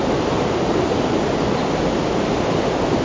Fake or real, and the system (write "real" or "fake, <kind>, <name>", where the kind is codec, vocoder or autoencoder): real